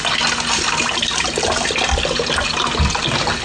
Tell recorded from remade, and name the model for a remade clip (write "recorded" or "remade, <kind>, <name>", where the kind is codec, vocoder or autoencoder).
recorded